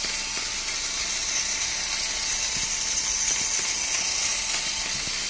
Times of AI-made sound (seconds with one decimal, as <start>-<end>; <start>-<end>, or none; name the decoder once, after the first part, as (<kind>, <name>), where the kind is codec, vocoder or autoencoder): none